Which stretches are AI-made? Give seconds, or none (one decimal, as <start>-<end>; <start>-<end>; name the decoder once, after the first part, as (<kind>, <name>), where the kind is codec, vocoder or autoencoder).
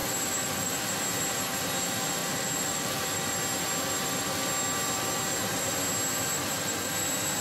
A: 0.0-0.9 (vocoder, BigVGAN v2); 2.2-3.3; 6.4-6.9